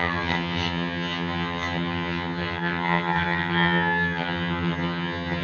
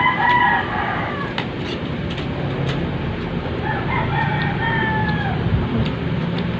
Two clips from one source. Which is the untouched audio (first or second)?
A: second